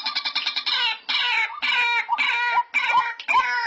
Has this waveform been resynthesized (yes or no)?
no